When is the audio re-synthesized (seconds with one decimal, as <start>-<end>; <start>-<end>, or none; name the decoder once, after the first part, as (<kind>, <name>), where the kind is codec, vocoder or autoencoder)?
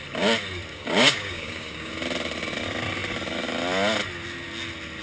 0.7-1.9 (codec, DAC)